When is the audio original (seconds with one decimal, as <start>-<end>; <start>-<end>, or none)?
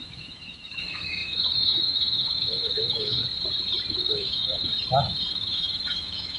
3.2-3.9; 4.7-5.3